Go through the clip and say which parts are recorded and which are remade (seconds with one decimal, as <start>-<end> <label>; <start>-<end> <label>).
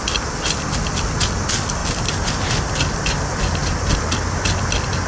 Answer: 0.0-5.1 recorded